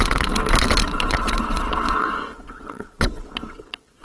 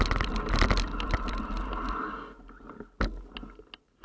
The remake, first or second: first